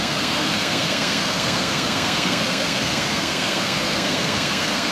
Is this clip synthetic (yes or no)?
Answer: yes